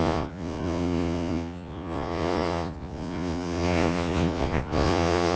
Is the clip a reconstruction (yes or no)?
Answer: yes